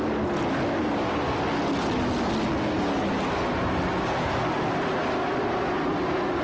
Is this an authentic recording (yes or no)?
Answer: yes